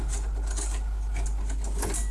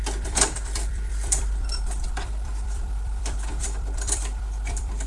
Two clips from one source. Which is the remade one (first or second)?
second